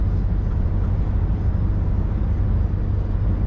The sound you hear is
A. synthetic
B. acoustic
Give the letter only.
B